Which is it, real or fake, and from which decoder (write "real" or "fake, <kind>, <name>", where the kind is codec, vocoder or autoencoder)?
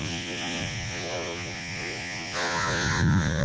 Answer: fake, vocoder, Vocos